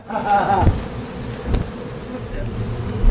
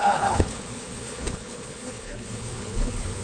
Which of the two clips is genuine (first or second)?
first